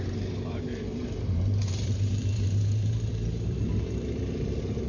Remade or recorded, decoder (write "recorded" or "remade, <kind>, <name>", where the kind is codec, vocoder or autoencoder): remade, vocoder, BigVGAN v2